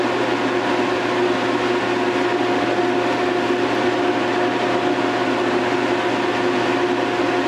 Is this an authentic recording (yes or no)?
yes